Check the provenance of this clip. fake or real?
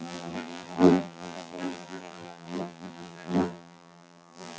fake